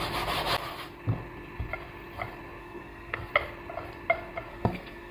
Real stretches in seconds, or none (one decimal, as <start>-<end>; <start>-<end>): 0.0-2.6; 3.3-4.5